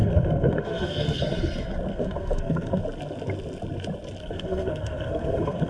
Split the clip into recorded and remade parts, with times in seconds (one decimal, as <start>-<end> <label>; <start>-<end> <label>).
0.0-1.2 remade; 1.2-1.9 recorded; 1.9-2.8 remade; 2.8-4.2 recorded; 4.2-5.7 remade